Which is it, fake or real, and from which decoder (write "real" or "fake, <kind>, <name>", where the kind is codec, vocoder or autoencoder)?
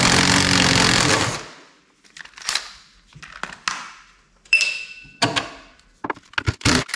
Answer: real